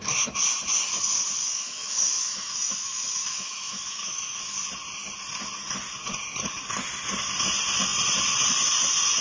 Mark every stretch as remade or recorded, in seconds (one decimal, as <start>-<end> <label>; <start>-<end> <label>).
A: 0.0-1.4 recorded; 1.4-4.4 remade; 4.4-9.2 recorded